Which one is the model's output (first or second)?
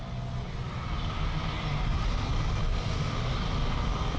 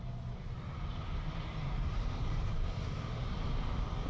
second